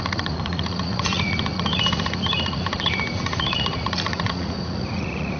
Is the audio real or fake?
fake